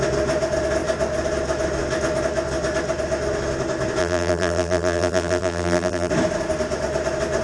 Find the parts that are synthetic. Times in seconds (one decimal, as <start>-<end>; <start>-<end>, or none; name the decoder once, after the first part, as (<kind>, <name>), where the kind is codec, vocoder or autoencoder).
4.0-6.1 (vocoder, BigVGAN v2)